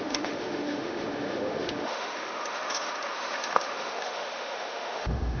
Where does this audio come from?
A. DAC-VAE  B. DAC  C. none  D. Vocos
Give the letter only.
A